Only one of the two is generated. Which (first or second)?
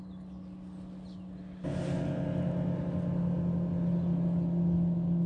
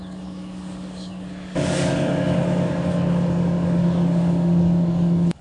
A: second